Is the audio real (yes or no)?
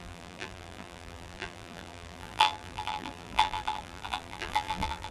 no